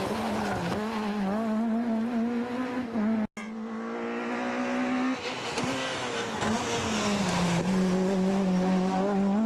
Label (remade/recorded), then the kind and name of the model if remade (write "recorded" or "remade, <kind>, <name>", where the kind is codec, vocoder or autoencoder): recorded